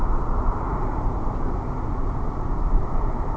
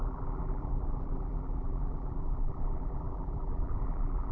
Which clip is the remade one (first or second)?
second